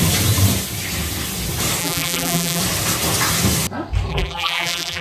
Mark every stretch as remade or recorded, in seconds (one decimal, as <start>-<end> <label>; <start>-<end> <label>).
0.0-1.8 recorded; 1.8-2.6 remade; 2.6-4.1 recorded; 4.1-5.0 remade